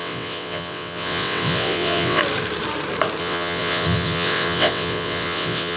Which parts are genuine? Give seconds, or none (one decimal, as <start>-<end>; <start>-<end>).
2.2-3.2